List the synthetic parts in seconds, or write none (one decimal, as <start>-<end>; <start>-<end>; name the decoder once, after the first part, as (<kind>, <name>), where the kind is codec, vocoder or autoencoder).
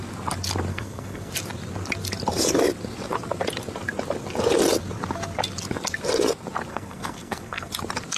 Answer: 0.7-1.3 (codec, SNAC); 6.7-7.7